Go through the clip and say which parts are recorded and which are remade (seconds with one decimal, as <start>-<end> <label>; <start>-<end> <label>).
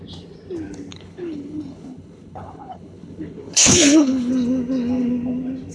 0.0-0.9 recorded; 0.9-4.3 remade; 4.3-5.7 recorded